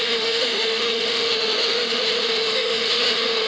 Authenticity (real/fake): fake